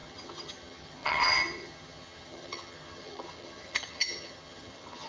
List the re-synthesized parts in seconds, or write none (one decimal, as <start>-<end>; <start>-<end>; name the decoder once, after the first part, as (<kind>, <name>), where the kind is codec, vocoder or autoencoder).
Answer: 0.0-5.1 (vocoder, HiFi-GAN)